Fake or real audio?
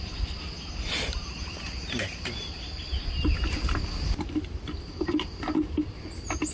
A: real